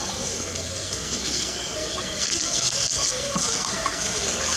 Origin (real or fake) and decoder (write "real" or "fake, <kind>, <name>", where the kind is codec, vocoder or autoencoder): fake, codec, SNAC